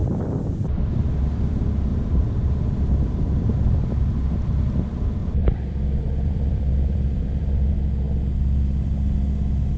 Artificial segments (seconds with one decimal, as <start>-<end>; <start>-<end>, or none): 0.0-1.5; 1.9-3.4; 5.2-7.7